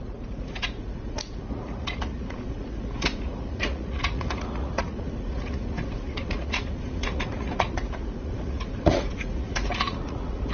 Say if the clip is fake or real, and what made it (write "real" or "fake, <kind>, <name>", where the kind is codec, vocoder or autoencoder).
fake, vocoder, Vocos